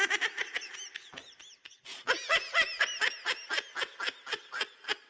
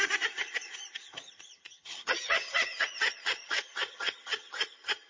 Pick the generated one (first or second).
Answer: second